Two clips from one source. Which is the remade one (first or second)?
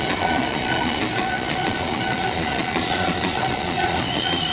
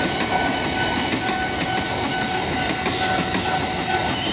first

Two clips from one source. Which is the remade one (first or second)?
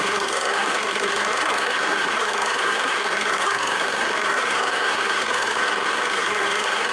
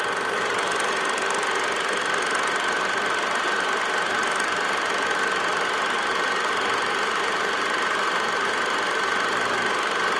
first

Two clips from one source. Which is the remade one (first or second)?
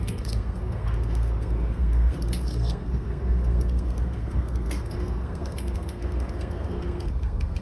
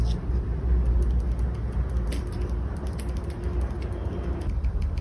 first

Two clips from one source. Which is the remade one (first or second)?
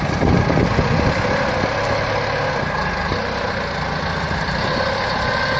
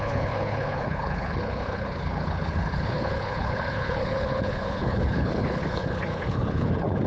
second